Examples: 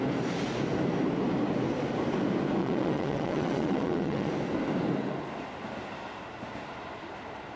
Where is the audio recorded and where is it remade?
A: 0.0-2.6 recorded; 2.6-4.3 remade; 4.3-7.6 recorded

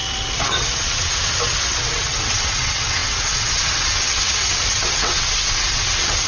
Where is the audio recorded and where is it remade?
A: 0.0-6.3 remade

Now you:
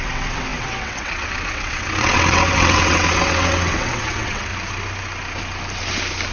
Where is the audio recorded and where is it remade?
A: 0.0-4.5 remade; 4.5-6.3 recorded